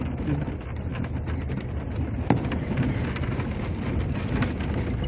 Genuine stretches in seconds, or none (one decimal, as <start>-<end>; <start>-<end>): 0.0-5.1